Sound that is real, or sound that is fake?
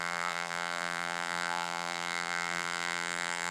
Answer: fake